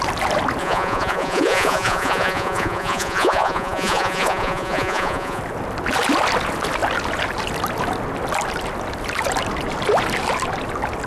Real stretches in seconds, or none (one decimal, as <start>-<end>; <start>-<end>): 0.0-0.6; 5.4-11.1